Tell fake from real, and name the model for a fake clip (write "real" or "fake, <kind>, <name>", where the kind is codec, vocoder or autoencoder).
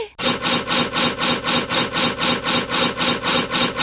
real